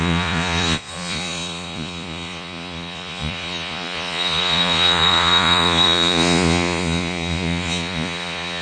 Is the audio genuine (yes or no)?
no